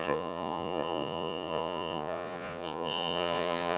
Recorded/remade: remade